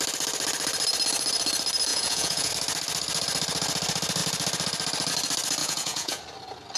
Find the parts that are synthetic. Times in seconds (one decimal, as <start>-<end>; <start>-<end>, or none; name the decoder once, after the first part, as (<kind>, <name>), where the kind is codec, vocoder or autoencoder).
1.9-2.5 (vocoder, Vocos); 5.6-6.2